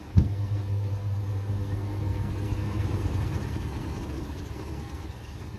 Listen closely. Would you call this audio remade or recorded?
remade